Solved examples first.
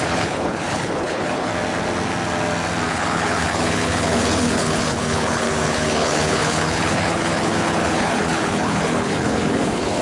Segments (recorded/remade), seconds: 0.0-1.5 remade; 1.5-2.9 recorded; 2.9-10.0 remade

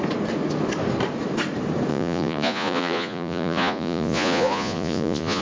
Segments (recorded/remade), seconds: 0.0-1.9 recorded; 1.9-5.4 remade

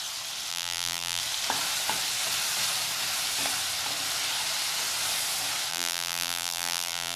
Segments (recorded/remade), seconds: 0.0-0.5 recorded; 0.5-1.2 remade; 1.2-5.7 recorded; 5.7-7.2 remade